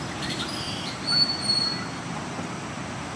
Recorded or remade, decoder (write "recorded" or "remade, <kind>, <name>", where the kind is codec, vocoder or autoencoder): recorded